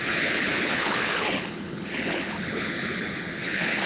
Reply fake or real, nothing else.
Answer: fake